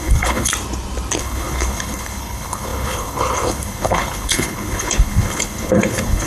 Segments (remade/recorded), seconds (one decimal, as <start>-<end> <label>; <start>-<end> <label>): 0.0-0.5 remade; 0.5-1.2 recorded; 1.2-6.3 remade